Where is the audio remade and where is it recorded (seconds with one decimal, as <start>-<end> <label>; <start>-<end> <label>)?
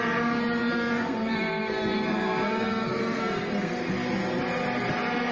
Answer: 0.0-0.7 recorded; 0.7-3.9 remade; 3.9-5.3 recorded